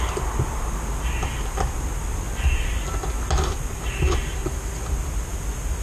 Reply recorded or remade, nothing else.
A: recorded